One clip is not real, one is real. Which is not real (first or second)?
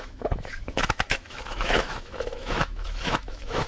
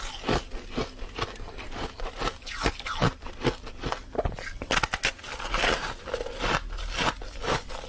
first